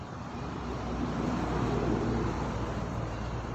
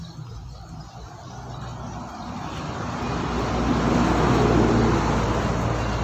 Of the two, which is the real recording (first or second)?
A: second